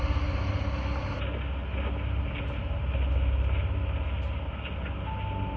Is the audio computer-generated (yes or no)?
no